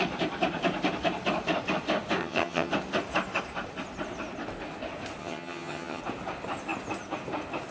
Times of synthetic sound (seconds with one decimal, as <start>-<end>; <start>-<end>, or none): 2.2-2.7; 5.2-6.0